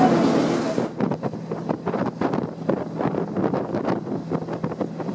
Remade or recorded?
recorded